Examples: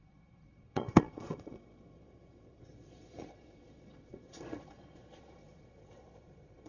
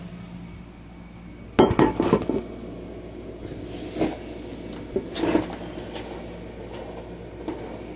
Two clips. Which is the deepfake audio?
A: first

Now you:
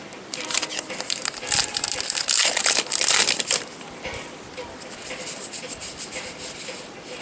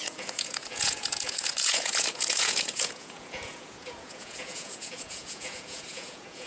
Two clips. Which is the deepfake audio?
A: second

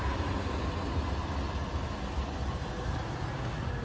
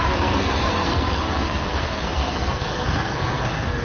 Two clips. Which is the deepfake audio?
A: second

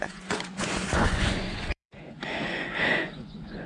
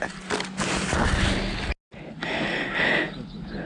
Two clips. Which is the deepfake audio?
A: first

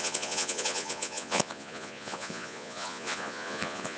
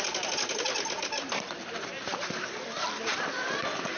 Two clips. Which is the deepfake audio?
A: first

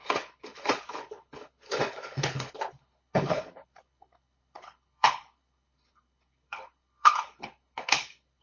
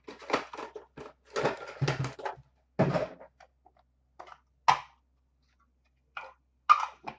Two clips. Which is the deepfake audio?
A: first